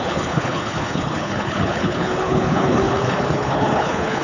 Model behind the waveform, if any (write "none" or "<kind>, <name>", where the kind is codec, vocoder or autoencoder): codec, HILCodec